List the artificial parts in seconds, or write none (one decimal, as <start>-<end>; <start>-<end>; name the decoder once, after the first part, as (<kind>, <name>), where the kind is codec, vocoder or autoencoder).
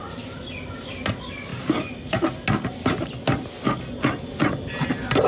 none